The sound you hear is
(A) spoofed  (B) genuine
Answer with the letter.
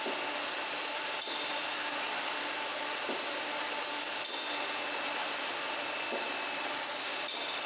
B